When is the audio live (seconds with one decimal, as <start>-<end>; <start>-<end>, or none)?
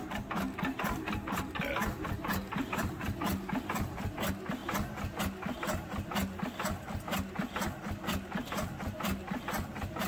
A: 0.0-10.1